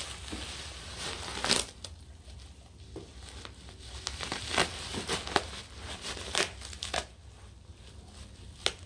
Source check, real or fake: real